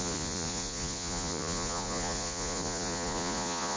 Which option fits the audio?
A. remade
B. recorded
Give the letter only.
A